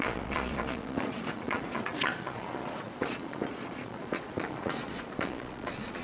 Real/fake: fake